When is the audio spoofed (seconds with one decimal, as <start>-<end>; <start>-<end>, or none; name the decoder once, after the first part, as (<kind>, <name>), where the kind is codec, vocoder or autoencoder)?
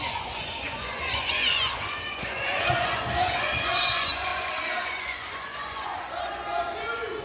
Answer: 0.0-7.2 (vocoder, Vocos)